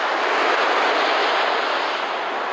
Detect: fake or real real